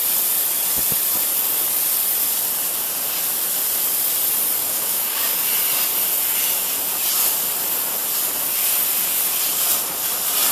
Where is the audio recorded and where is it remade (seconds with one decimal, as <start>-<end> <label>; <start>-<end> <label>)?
0.0-4.6 recorded; 4.6-5.5 remade; 5.5-10.5 recorded